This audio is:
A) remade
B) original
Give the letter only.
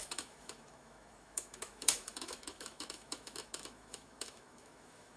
A